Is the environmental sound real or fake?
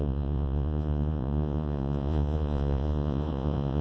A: fake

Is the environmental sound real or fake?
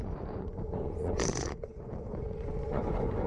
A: fake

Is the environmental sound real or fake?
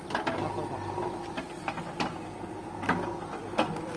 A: real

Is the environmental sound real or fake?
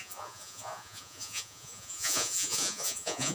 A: fake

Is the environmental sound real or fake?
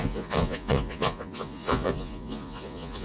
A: fake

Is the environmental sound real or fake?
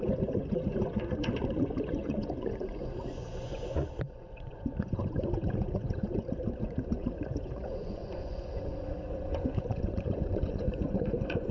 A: fake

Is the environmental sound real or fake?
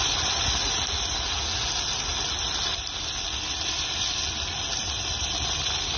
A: real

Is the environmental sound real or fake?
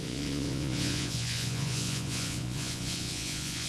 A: fake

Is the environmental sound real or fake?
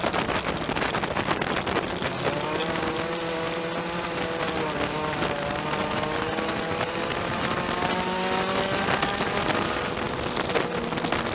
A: real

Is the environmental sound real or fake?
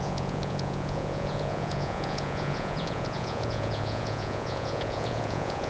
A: fake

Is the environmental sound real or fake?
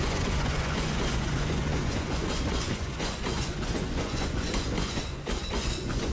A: fake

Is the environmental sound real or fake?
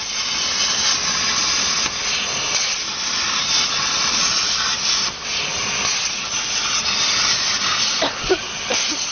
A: real